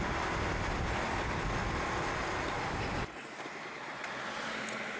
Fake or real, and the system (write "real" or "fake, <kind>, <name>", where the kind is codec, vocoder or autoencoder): real